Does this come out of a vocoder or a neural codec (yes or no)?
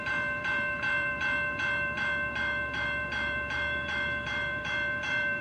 yes